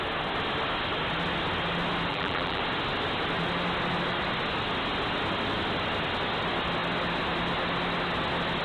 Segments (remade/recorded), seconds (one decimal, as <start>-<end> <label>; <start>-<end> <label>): 0.0-2.1 recorded; 2.1-2.6 remade; 2.6-8.6 recorded